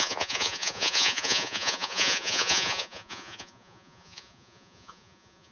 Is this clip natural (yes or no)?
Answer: no